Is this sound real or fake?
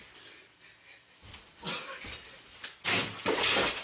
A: real